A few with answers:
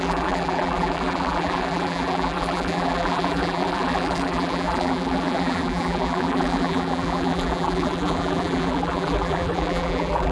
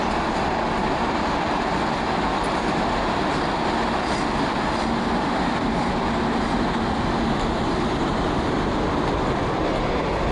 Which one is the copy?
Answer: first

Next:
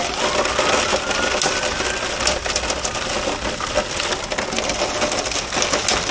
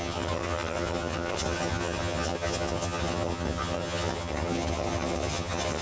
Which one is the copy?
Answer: second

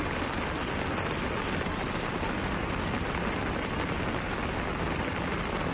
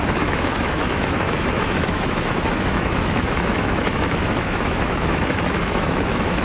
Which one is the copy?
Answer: second